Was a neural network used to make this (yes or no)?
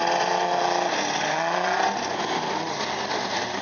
no